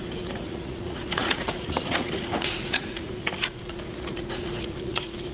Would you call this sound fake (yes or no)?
yes